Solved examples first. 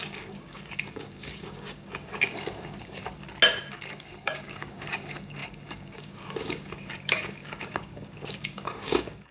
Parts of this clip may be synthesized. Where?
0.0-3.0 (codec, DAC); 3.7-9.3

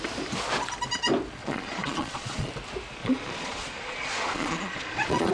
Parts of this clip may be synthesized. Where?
1.4-2.5 (vocoder, Vocos); 3.0-5.3